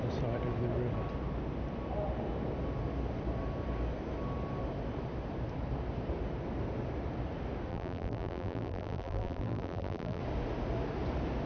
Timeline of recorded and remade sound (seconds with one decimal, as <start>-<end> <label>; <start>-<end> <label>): 0.0-7.7 recorded; 7.7-10.2 remade; 10.2-11.5 recorded